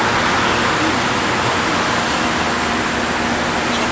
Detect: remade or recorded recorded